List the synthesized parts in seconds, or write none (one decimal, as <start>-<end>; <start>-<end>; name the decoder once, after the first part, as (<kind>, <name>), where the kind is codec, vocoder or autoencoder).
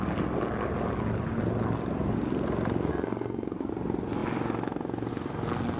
2.9-3.7 (codec, SNAC)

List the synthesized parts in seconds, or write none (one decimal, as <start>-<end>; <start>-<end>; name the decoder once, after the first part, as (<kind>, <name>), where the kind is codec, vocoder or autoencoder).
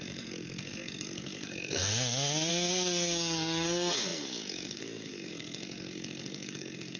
0.0-1.9 (codec, SNAC); 2.5-7.0